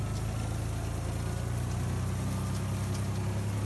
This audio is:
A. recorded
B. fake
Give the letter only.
A